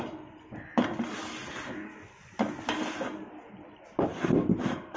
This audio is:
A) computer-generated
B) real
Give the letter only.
B